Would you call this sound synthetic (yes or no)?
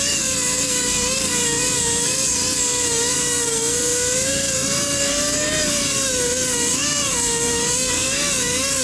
yes